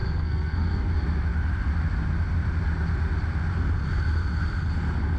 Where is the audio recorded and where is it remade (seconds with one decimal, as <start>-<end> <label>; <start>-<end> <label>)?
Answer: 0.0-0.9 remade; 0.9-5.2 recorded